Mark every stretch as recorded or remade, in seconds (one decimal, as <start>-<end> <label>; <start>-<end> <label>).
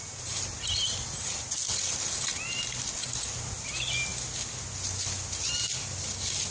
0.0-6.5 recorded